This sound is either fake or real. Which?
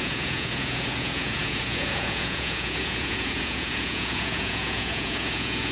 fake